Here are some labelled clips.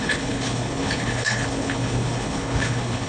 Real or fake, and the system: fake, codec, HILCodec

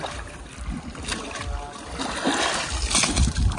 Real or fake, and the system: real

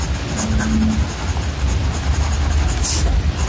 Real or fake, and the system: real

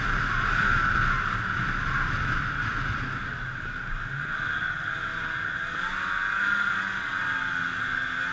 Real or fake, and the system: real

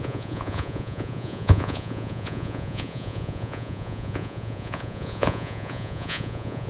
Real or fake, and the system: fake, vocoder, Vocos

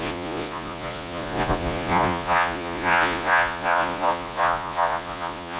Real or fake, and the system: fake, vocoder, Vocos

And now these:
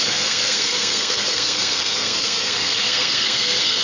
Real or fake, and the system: fake, codec, SNAC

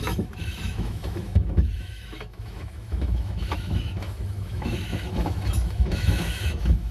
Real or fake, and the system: fake, autoencoder, DAC-VAE